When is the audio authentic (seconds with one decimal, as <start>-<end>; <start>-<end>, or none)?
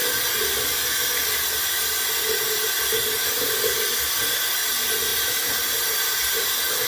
0.0-6.9